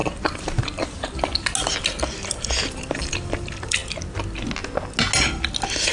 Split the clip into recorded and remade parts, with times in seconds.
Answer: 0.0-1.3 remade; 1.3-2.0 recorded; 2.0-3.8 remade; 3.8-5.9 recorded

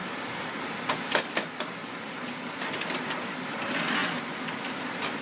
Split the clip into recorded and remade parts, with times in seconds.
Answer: 0.0-0.8 recorded; 0.8-1.8 remade; 1.8-3.5 recorded; 3.5-4.0 remade; 4.0-4.7 recorded; 4.7-5.2 remade